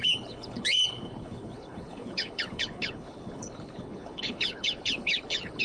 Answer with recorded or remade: remade